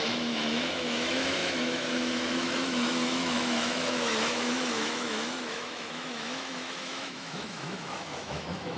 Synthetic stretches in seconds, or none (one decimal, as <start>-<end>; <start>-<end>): 0.0-8.8